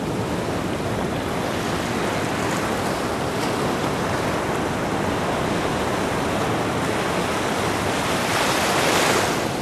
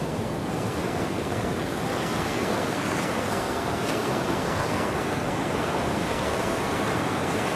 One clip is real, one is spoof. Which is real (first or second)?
first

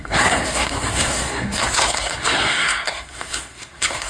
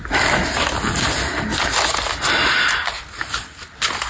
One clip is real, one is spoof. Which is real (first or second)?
second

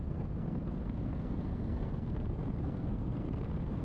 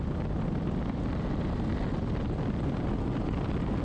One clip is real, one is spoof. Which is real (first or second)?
second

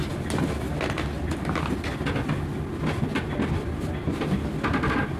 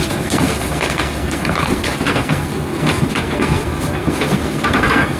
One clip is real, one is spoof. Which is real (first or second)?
first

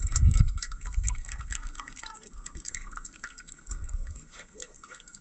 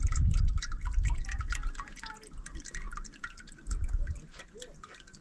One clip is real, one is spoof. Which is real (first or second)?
second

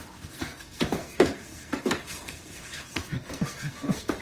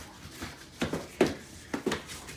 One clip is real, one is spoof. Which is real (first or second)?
second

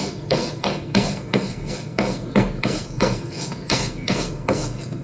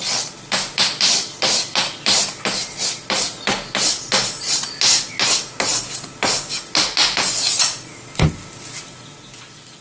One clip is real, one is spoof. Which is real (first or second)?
second